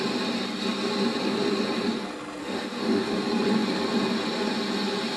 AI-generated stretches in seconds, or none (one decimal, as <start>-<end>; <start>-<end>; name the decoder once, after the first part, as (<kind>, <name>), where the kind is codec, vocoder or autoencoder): 2.4-3.0 (autoencoder, DAC-VAE)